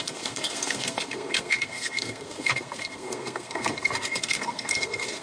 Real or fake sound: fake